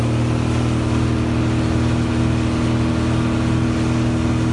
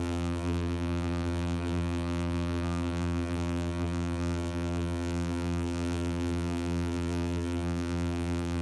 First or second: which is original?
first